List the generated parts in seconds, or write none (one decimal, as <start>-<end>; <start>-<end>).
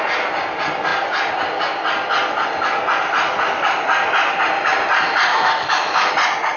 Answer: 5.3-6.1